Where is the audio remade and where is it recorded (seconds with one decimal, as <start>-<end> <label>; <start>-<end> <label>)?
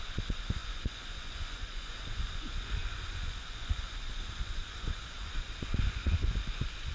0.0-6.9 remade